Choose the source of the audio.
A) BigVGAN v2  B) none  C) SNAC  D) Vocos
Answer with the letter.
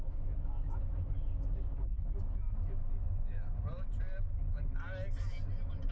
B